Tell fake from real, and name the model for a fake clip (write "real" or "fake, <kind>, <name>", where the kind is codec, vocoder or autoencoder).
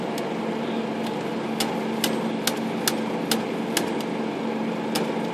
real